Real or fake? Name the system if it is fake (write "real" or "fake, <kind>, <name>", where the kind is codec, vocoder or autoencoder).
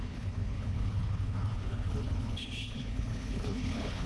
fake, codec, HILCodec